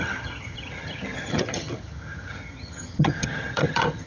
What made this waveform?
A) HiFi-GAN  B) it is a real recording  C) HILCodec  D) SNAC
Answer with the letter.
A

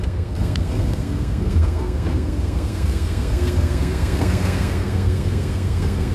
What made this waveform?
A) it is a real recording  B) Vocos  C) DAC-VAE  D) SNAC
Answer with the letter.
D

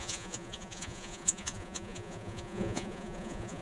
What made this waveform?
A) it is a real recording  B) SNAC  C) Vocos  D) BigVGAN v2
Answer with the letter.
C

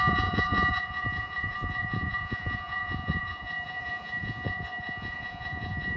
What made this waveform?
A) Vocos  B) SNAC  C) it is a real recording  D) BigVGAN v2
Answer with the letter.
A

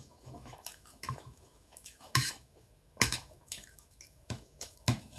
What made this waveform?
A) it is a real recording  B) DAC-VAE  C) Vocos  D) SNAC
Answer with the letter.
B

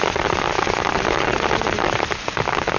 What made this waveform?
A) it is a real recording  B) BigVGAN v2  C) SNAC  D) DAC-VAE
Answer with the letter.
A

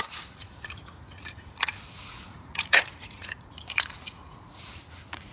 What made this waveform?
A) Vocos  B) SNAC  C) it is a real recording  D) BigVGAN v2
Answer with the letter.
A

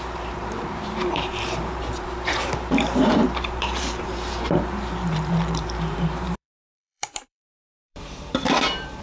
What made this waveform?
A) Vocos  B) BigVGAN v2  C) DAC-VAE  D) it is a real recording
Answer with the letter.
B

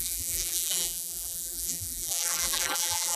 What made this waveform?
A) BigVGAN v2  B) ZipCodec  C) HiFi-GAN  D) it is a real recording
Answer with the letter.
A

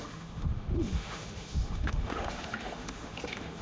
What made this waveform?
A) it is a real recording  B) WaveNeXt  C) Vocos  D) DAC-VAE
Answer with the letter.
D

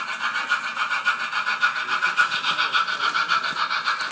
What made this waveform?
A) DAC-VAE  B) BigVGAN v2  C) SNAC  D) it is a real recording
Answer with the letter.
D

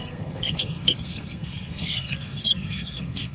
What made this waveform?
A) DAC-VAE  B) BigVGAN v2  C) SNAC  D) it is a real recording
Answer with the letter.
C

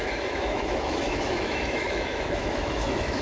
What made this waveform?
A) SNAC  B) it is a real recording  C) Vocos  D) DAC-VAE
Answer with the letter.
D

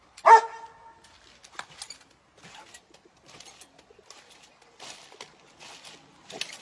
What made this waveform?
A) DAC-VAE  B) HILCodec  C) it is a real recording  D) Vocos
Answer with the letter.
C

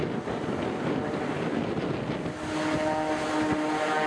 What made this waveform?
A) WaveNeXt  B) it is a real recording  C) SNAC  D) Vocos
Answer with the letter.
B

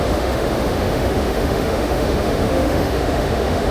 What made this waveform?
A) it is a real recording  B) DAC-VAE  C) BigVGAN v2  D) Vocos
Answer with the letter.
B